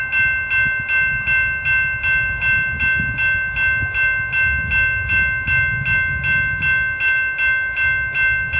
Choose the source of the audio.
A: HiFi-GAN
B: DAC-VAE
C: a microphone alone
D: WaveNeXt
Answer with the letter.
C